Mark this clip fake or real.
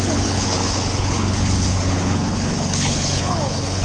fake